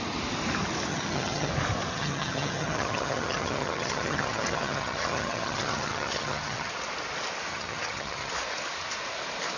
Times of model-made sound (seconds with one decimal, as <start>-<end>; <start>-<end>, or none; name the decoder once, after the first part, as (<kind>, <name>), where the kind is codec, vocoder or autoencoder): 0.9-1.5 (vocoder, HiFi-GAN); 1.9-6.7; 7.5-8.3

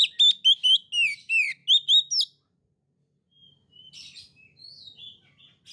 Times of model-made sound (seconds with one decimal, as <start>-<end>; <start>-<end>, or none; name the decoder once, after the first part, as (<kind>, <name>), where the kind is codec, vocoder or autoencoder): none